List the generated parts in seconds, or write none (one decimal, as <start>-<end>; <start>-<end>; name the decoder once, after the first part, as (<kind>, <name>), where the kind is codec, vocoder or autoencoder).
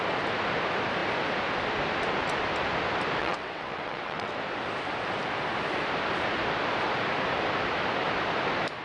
3.2-4.3 (vocoder, WaveNeXt)